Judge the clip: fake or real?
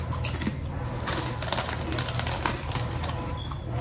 real